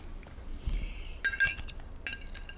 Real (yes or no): yes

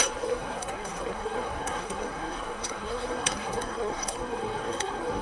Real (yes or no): no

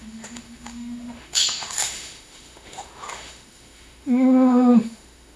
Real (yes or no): no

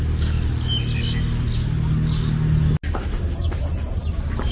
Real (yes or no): yes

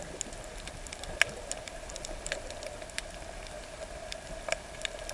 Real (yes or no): yes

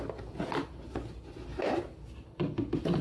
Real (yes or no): yes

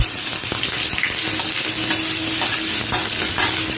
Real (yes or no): yes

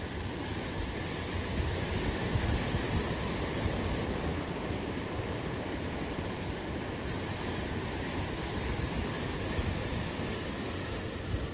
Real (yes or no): yes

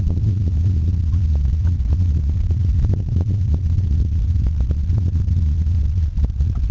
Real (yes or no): yes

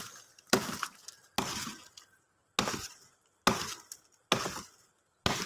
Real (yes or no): yes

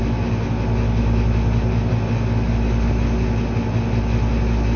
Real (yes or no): yes